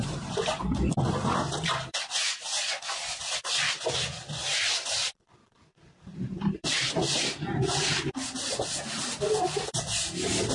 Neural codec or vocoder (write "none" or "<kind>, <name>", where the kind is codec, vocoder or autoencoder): vocoder, BigVGAN v2